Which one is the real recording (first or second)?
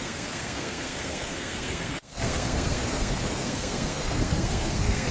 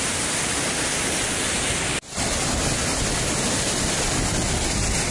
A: second